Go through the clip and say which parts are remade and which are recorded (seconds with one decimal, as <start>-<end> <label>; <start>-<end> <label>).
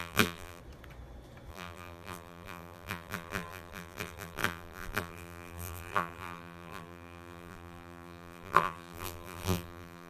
0.0-0.6 remade; 0.6-1.5 recorded; 1.5-10.1 remade